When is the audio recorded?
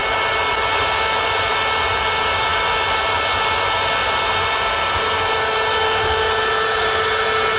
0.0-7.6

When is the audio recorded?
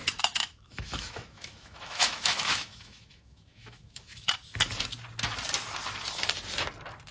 4.3-7.1